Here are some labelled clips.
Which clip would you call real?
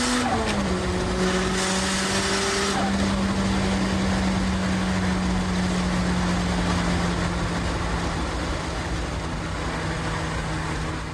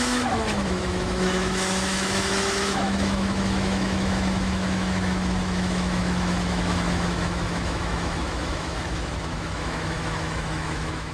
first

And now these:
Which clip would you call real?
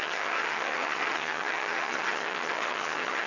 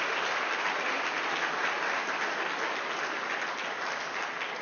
second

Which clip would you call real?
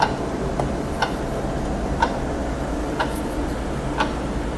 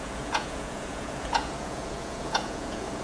first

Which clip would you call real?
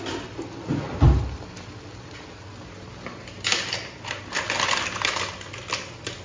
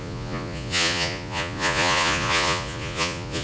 first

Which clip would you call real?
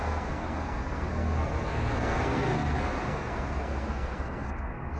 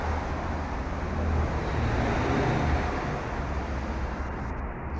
second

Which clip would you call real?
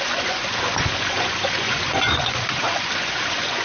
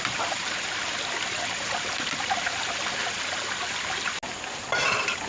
second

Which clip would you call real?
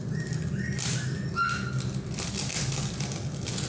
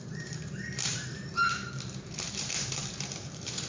first